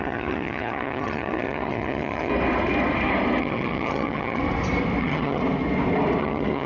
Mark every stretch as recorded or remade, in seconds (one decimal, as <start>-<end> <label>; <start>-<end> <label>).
0.0-2.3 remade; 2.3-3.4 recorded; 3.4-4.4 remade; 4.4-5.0 recorded; 5.0-5.4 remade; 5.4-6.2 recorded; 6.2-6.7 remade